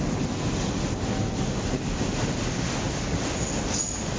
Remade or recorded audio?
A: recorded